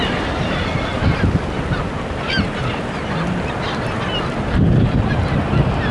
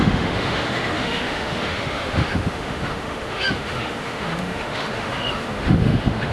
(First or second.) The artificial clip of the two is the second